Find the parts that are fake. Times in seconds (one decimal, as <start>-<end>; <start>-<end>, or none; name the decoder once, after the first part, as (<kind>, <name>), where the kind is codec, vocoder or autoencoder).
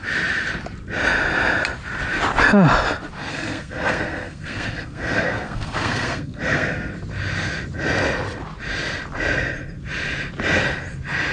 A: 3.3-6.9 (codec, SNAC)